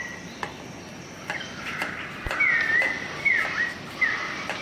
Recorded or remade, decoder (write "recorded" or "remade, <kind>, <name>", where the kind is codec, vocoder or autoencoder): recorded